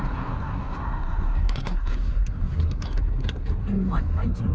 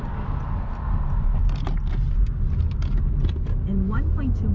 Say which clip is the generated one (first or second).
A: first